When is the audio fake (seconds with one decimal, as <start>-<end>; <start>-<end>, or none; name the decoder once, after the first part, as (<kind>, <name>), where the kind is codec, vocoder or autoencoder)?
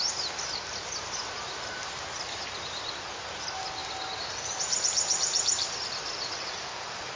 none